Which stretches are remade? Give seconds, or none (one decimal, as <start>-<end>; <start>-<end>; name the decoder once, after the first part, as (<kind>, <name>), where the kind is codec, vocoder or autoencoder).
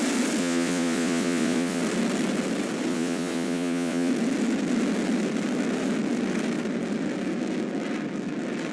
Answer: 0.4-1.8 (vocoder, Vocos); 2.9-4.1